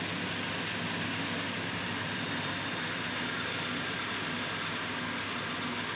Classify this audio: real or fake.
real